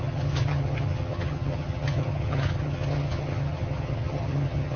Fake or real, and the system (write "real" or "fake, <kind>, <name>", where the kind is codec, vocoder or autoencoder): fake, vocoder, HiFi-GAN